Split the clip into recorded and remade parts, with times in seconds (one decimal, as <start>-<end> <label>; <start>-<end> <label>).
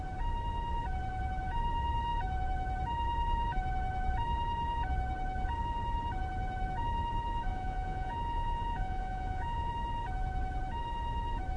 0.0-7.5 recorded; 7.5-9.7 remade; 9.7-11.6 recorded